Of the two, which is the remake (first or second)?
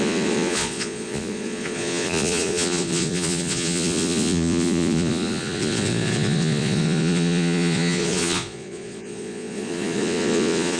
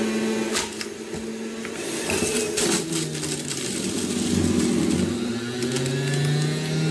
first